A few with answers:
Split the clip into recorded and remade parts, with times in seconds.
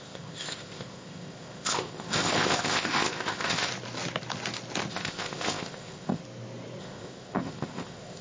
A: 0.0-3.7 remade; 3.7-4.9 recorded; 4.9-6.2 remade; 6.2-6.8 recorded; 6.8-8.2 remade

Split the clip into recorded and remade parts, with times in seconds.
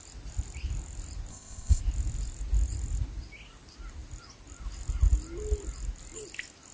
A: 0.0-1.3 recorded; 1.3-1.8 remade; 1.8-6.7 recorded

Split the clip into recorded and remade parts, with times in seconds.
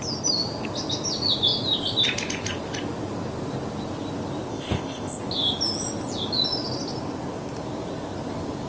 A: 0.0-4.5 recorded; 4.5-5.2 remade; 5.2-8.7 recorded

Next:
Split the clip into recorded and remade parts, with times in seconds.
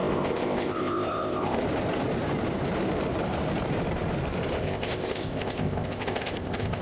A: 0.0-1.6 remade; 1.6-4.6 recorded; 4.6-6.8 remade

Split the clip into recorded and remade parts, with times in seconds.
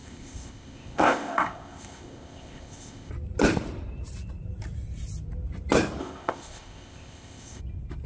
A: 0.0-3.1 remade; 3.1-6.0 recorded; 6.0-7.6 remade; 7.6-8.1 recorded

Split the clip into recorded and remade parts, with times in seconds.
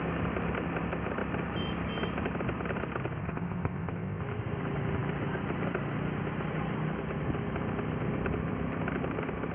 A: 0.0-3.2 recorded; 3.2-4.2 remade; 4.2-9.5 recorded